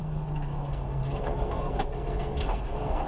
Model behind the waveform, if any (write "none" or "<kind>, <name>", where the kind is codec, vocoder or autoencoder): codec, SNAC